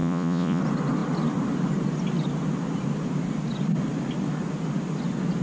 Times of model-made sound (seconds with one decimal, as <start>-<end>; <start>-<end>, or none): 0.0-0.6